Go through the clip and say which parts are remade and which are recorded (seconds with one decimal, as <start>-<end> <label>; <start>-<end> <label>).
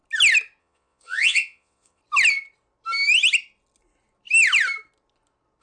0.0-0.6 recorded; 0.6-2.0 remade; 2.0-5.6 recorded